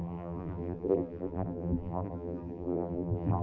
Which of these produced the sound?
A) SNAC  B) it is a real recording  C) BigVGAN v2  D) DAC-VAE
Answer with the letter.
C